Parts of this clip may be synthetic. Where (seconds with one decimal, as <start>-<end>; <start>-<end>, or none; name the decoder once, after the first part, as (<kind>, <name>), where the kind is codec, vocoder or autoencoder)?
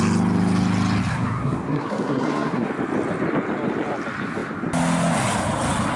1.1-2.7 (codec, SNAC)